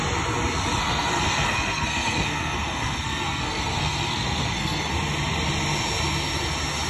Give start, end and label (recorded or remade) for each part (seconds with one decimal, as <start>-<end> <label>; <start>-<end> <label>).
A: 0.0-0.8 recorded; 0.8-4.9 remade; 4.9-6.9 recorded